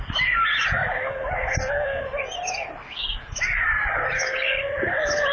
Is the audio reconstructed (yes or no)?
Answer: no